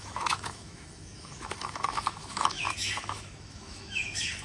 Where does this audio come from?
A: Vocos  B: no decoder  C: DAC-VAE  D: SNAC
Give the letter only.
C